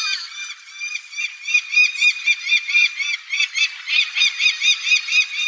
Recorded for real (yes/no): yes